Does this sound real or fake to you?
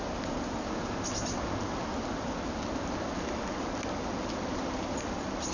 real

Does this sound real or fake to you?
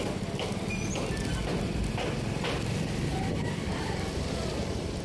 real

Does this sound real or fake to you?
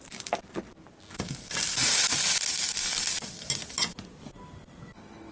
real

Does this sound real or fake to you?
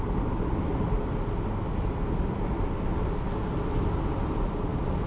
real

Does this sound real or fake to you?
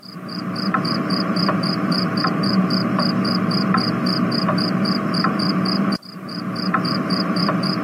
fake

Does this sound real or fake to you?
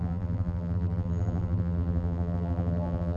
fake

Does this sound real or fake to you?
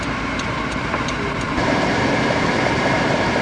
fake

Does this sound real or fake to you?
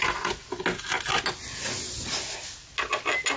real